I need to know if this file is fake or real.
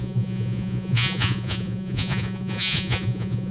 fake